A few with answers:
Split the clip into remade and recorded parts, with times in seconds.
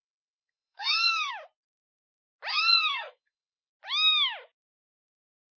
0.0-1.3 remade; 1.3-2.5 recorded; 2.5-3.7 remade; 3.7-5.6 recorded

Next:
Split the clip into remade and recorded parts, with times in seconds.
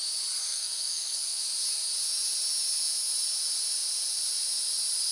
0.0-0.4 recorded; 0.4-1.4 remade; 1.4-5.1 recorded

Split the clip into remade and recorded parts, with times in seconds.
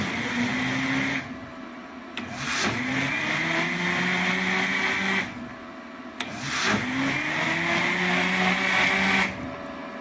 0.0-10.0 recorded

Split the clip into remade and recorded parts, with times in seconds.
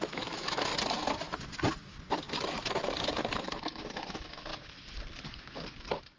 0.0-0.7 remade; 0.7-3.4 recorded; 3.4-4.5 remade; 4.5-6.2 recorded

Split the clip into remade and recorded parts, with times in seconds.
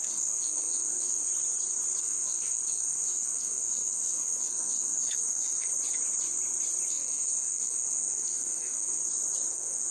0.0-1.3 remade; 1.3-2.0 recorded; 2.0-5.7 remade; 5.7-6.9 recorded; 6.9-9.0 remade; 9.0-9.5 recorded; 9.5-9.9 remade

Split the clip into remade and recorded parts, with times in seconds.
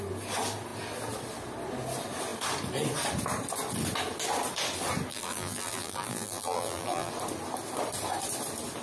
0.0-5.1 recorded; 5.1-7.1 remade; 7.1-8.8 recorded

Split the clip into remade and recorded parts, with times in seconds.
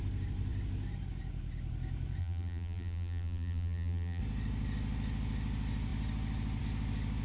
0.0-2.2 recorded; 2.2-4.2 remade; 4.2-7.2 recorded